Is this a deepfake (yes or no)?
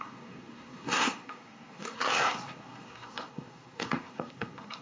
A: yes